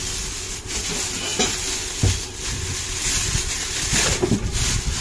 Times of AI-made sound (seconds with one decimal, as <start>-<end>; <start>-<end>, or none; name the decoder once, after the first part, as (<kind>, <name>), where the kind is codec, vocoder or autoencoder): none